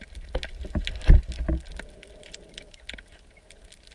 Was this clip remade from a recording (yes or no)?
no